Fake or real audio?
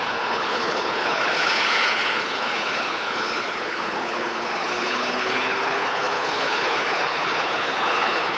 fake